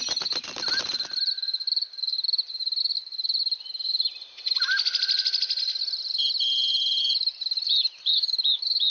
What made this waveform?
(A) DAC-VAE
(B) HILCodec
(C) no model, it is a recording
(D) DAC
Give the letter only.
C